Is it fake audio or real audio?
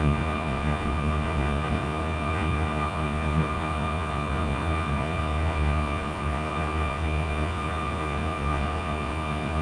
fake